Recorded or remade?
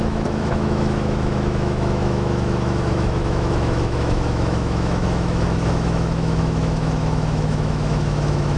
remade